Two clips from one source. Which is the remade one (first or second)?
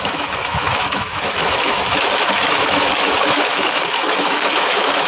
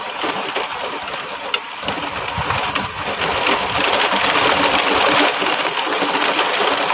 first